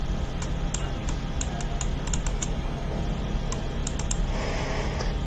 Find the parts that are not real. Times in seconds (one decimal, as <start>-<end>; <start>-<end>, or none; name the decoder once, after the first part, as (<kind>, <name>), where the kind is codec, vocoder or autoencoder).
2.3-3.0 (codec, DAC)